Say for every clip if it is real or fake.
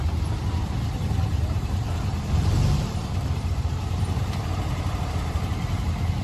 fake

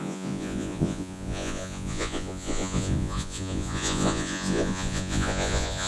fake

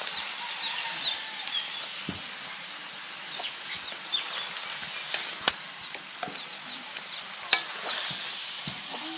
real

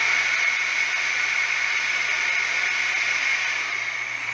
real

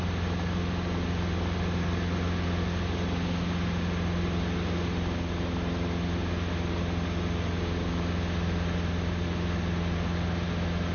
real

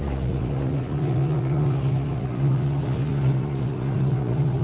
fake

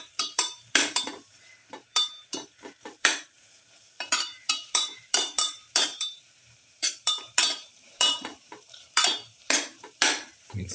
fake